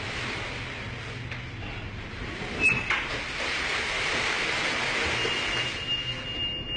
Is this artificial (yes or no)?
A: no